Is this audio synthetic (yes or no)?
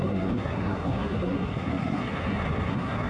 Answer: yes